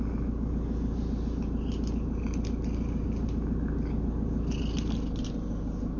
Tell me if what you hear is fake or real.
real